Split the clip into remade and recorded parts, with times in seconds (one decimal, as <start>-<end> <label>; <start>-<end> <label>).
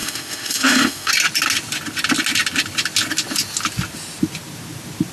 0.0-1.1 remade; 1.1-5.1 recorded